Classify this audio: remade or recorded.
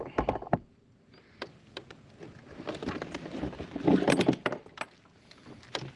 recorded